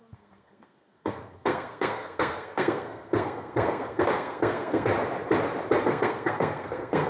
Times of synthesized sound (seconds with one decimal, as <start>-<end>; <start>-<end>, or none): 0.0-4.9; 5.8-7.1